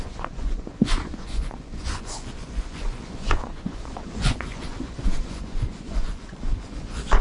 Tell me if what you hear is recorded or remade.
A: remade